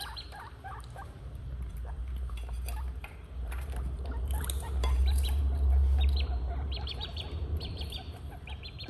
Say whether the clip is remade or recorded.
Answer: remade